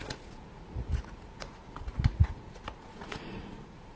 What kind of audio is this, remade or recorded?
remade